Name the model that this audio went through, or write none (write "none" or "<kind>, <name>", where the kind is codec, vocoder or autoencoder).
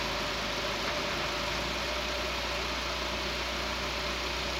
none